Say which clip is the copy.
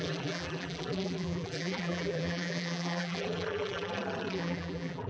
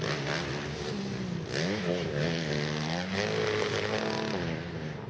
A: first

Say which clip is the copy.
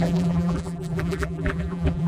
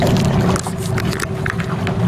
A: first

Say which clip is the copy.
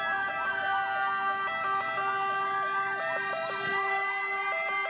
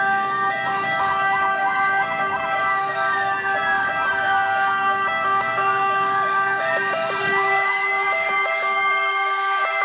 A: second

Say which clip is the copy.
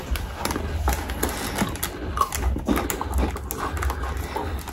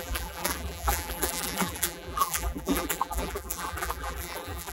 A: second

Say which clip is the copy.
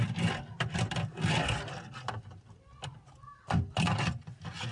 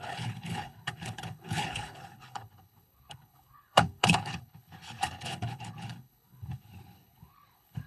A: second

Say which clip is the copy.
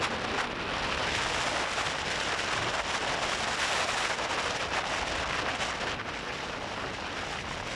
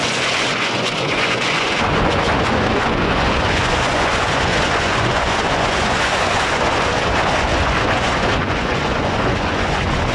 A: second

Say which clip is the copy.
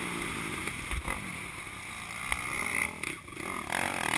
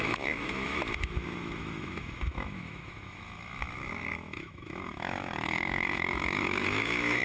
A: second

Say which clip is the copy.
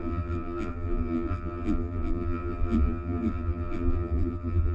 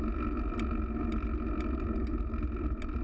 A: first